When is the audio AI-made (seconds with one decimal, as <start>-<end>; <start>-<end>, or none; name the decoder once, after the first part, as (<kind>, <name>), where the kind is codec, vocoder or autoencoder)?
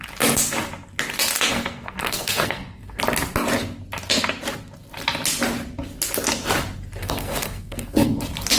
1.5-3.0 (codec, SNAC); 7.0-8.2